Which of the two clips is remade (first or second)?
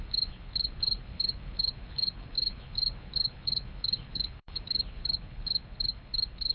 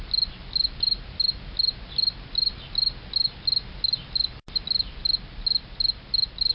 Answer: first